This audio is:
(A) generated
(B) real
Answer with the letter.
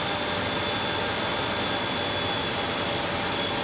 B